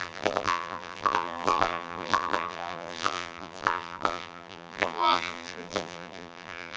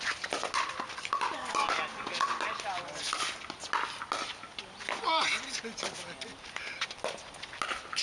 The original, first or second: second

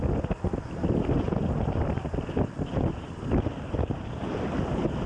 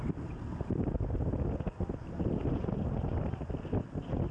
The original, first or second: second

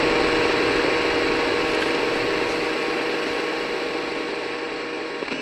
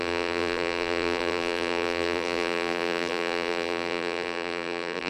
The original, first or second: first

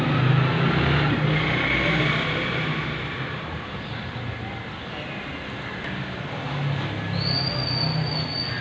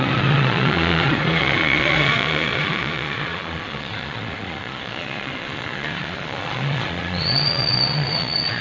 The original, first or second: first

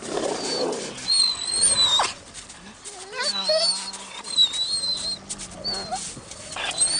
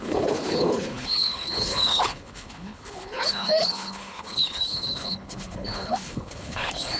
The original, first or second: first